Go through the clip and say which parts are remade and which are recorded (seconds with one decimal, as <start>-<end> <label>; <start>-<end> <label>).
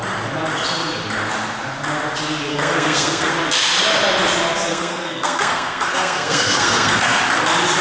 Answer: 0.0-2.5 recorded; 2.5-3.3 remade; 3.3-4.7 recorded; 4.7-7.2 remade; 7.2-7.8 recorded